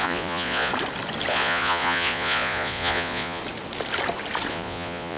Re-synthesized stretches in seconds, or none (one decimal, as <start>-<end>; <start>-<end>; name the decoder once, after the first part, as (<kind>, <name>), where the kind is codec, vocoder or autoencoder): 0.0-0.7 (vocoder, Vocos); 1.3-3.4; 4.5-5.2